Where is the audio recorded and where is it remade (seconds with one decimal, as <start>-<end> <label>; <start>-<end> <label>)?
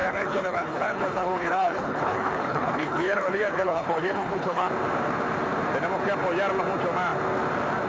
0.0-4.7 remade; 4.7-7.9 recorded